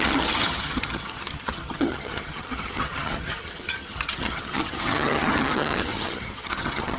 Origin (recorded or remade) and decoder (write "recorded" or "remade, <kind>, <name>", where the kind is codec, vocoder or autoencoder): remade, vocoder, HiFi-GAN